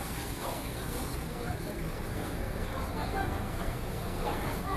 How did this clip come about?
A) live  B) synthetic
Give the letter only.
B